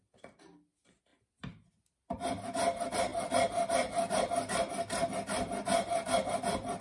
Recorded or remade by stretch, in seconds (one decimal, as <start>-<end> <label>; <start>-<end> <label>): 0.0-6.8 recorded